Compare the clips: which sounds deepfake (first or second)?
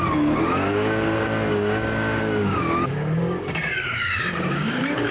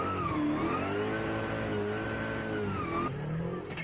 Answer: first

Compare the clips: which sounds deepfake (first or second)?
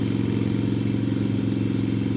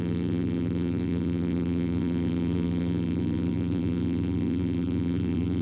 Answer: second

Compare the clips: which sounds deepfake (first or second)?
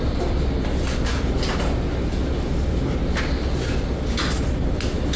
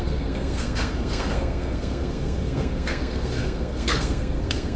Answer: second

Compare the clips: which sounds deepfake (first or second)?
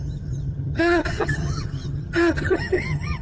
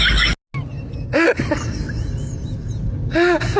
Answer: first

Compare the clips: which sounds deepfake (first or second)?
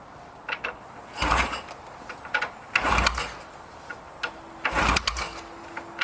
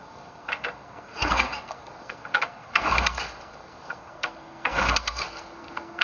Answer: second